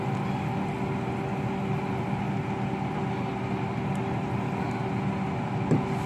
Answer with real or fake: real